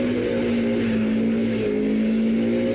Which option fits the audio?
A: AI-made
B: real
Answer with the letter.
B